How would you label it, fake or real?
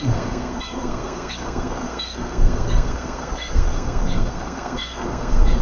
fake